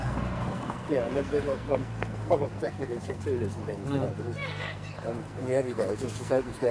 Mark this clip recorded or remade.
remade